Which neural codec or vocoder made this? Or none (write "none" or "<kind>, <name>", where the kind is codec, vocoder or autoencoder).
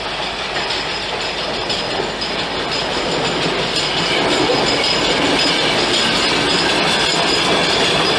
none